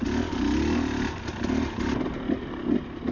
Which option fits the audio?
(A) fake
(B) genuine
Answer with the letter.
B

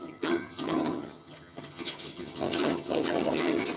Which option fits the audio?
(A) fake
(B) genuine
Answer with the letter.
A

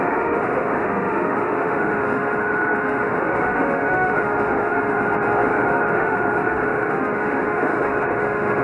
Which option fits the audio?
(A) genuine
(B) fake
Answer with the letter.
B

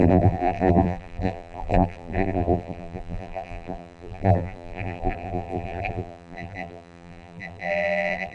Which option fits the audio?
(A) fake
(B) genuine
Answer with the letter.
A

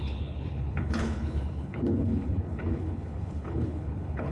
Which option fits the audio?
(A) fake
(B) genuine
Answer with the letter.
A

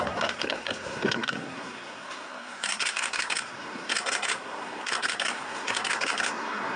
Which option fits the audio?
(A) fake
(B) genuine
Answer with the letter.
A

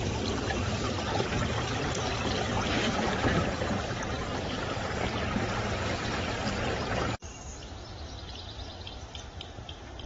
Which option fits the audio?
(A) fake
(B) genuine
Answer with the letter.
A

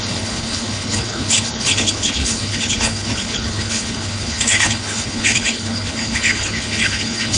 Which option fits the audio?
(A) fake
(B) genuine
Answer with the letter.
A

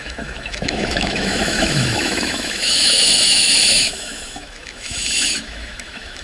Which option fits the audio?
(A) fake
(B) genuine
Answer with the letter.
A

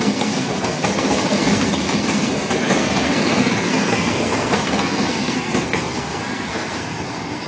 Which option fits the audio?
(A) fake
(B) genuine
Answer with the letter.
A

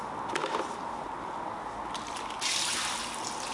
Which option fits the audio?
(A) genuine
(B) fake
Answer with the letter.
A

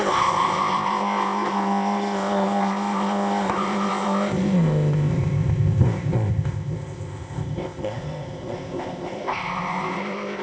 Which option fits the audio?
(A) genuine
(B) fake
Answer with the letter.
B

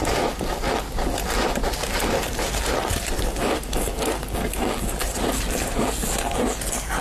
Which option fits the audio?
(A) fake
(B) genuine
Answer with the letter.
B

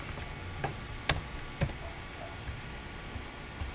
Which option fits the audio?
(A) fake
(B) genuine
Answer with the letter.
B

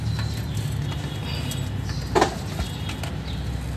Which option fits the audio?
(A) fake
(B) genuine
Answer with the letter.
B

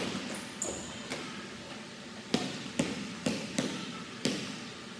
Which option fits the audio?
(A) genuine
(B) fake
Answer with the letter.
A